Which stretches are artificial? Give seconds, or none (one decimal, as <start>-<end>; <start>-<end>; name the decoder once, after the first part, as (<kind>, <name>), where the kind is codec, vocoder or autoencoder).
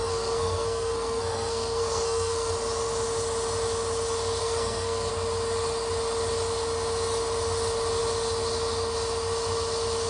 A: 0.0-2.5 (codec, SNAC); 4.4-5.1